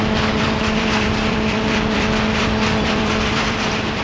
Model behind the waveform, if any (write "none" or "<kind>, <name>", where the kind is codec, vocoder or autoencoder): vocoder, BigVGAN v2